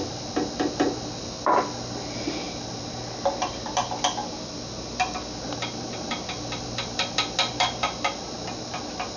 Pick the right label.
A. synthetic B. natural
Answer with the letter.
B